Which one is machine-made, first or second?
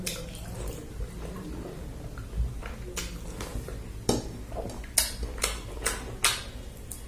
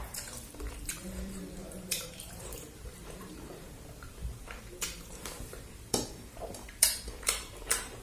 second